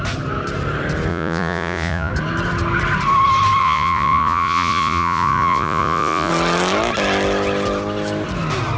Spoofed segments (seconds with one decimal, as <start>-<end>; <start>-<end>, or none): 1.1-2.1; 3.6-6.3